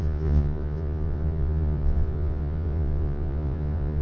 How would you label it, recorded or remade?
remade